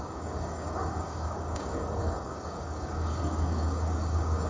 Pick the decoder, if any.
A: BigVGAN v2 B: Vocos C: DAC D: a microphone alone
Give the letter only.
C